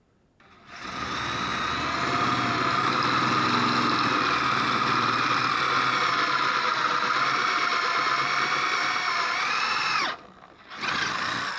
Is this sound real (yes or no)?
yes